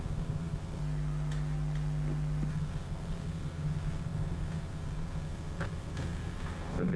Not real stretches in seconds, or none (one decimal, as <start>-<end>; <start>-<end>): 0.0-0.8; 2.5-7.0

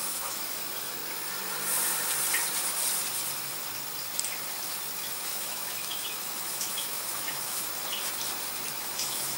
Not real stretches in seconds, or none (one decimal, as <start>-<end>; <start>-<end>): 0.0-1.0; 5.1-7.7; 8.7-9.4

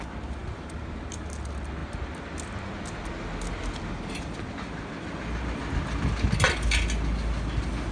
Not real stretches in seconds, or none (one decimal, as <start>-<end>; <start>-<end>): none